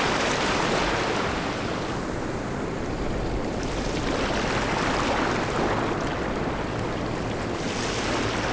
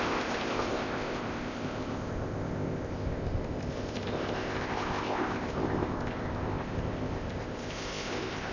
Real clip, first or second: first